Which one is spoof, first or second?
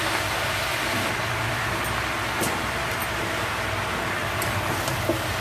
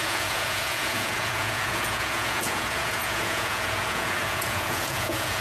second